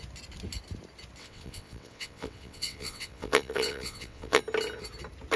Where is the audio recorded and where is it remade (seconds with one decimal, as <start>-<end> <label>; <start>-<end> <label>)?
0.0-1.2 recorded; 1.2-4.4 remade; 4.4-5.4 recorded